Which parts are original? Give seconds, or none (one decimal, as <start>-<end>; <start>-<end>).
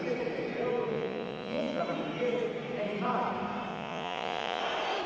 0.0-0.9; 1.8-3.7; 4.6-5.1